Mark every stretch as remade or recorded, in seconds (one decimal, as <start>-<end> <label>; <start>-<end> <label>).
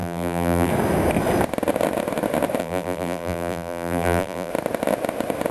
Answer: 0.0-0.7 remade; 0.7-2.6 recorded; 2.6-4.5 remade; 4.5-5.5 recorded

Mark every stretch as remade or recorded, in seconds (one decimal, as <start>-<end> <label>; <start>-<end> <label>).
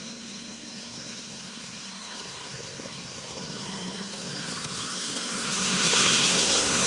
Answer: 0.0-6.9 remade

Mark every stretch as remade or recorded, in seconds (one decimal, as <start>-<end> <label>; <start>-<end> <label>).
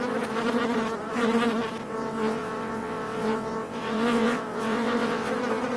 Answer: 0.0-1.8 recorded; 1.8-5.3 remade; 5.3-5.8 recorded